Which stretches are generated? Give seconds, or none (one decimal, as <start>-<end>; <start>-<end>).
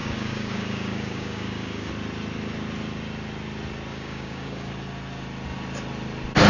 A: 0.0-1.9; 3.9-4.7